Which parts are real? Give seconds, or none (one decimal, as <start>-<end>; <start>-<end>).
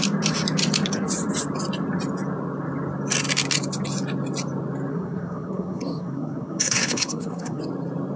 0.0-4.9; 7.6-8.2